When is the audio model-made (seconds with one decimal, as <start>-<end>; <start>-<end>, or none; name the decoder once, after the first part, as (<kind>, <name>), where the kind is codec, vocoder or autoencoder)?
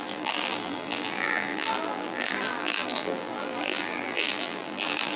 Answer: 0.0-5.2 (vocoder, BigVGAN v2)